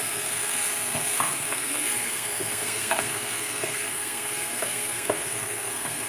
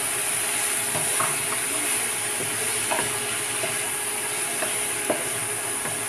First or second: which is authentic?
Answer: second